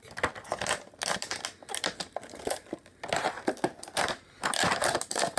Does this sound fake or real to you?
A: real